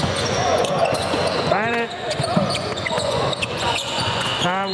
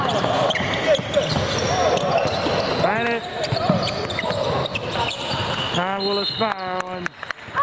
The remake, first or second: first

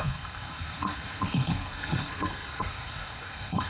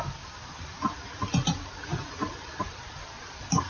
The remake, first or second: first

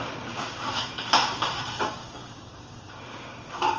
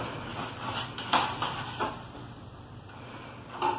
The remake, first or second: first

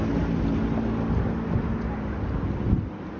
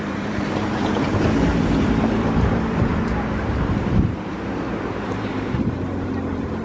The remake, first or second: second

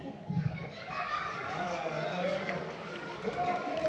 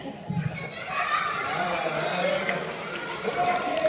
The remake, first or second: first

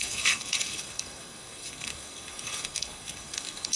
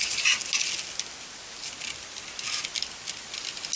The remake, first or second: first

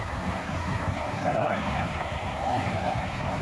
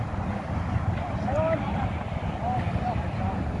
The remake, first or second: first